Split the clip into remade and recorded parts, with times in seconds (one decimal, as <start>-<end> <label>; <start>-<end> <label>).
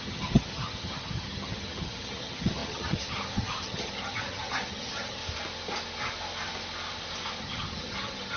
0.0-5.2 remade; 5.2-7.4 recorded; 7.4-8.4 remade